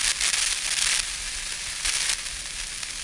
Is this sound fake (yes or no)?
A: no